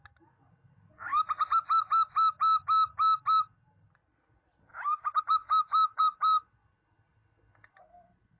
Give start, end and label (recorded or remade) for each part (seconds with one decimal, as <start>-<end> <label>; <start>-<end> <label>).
0.0-1.1 recorded; 1.1-1.9 remade; 1.9-4.7 recorded; 4.7-6.0 remade; 6.0-8.4 recorded